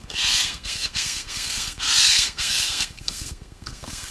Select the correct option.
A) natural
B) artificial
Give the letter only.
B